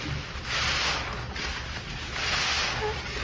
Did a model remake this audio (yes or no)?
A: no